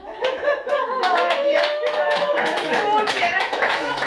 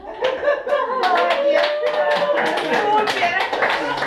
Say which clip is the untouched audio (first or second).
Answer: second